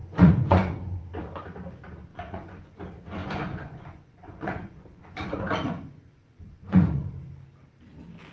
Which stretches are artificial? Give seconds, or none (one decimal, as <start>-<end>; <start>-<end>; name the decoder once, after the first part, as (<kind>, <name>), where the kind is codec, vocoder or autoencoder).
0.0-1.0 (vocoder, Vocos); 2.1-2.8; 3.2-7.1